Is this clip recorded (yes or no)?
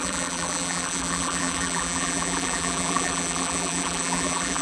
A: no